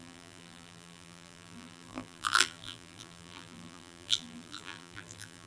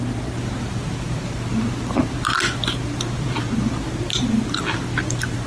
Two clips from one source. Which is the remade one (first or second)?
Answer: first